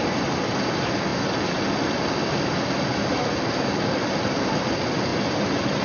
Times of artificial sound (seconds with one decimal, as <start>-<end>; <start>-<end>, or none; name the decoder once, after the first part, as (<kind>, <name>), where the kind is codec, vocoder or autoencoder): 0.0-1.1 (vocoder, BigVGAN v2); 4.6-5.8